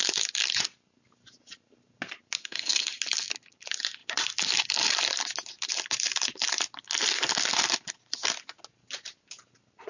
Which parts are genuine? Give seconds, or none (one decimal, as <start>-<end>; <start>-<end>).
0.0-2.4; 2.9-9.9